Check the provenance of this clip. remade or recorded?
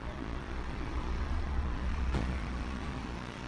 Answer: remade